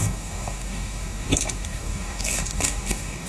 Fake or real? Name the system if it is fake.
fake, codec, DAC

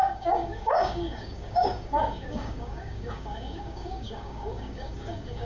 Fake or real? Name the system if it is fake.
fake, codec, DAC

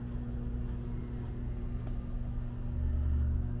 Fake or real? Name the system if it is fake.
real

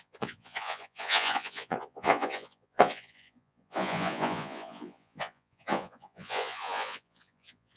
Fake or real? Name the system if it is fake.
fake, vocoder, Vocos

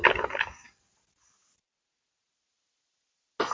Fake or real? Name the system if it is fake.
real